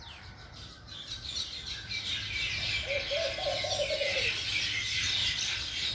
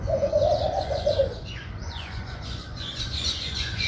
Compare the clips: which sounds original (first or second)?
first